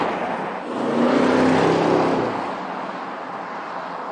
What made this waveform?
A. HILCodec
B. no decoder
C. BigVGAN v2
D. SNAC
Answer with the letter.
B